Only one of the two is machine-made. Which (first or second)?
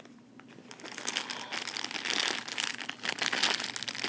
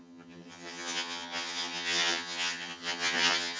second